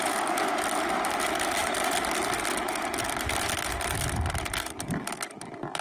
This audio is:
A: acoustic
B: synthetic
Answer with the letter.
A